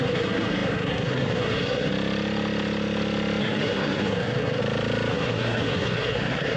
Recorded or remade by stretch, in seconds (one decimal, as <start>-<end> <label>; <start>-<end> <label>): 0.0-1.9 remade; 1.9-3.4 recorded; 3.4-4.6 remade; 4.6-5.1 recorded; 5.1-6.6 remade